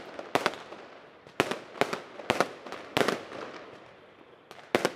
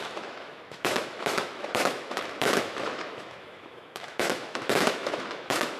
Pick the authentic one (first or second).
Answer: first